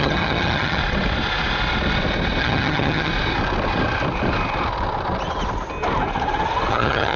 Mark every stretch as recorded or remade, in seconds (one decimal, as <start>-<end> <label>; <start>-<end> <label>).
0.0-0.8 remade; 0.8-2.4 recorded; 2.4-3.1 remade; 3.1-6.7 recorded; 6.7-7.2 remade